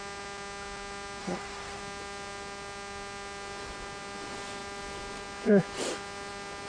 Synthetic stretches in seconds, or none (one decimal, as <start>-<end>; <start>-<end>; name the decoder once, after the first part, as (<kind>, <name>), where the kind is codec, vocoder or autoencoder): 1.2-1.8 (codec, HILCodec)